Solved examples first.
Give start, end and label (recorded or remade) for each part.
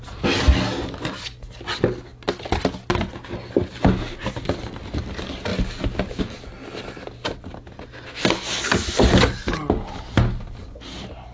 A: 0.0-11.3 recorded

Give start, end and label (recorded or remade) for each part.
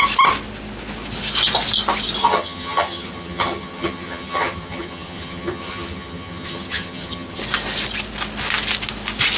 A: 0.0-2.2 recorded; 2.2-7.4 remade; 7.4-9.4 recorded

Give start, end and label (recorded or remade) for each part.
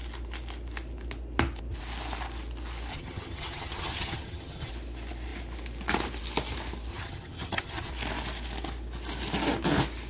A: 0.0-2.9 recorded; 2.9-4.7 remade; 4.7-6.9 recorded; 6.9-7.9 remade; 7.9-10.1 recorded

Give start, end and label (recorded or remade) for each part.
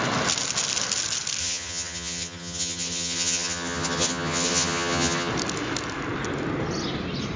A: 0.0-1.4 recorded; 1.4-5.3 remade; 5.3-7.4 recorded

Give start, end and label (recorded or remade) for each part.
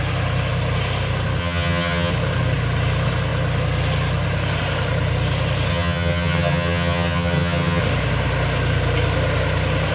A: 0.0-1.4 recorded; 1.4-2.1 remade; 2.1-5.7 recorded; 5.7-7.8 remade; 7.8-9.9 recorded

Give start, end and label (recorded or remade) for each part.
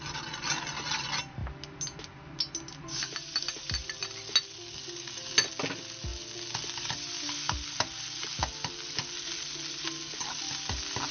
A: 0.0-11.1 recorded